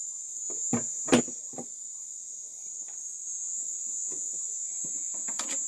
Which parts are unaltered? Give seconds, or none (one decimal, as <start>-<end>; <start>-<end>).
0.0-5.7